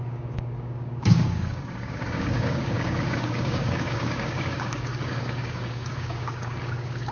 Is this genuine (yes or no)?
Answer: no